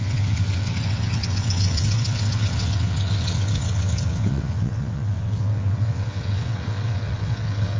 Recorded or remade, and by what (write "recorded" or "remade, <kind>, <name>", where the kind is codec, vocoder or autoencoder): remade, vocoder, WaveNeXt